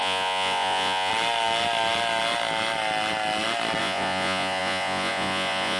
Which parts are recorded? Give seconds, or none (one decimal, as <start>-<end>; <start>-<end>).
1.1-3.8